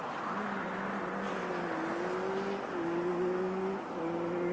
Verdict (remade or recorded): recorded